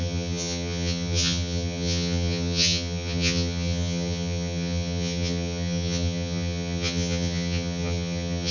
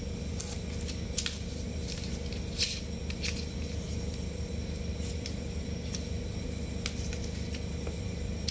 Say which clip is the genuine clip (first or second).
second